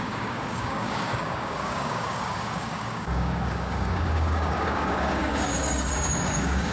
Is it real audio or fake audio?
fake